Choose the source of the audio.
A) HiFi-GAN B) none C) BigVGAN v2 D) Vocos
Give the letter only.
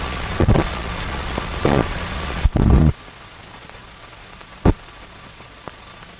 D